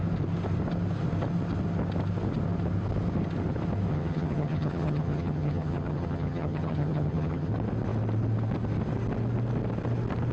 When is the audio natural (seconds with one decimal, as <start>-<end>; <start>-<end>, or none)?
0.0-3.9; 7.5-10.3